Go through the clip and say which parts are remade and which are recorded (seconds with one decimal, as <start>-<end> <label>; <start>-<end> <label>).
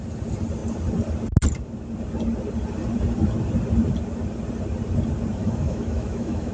0.0-5.4 recorded; 5.4-6.5 remade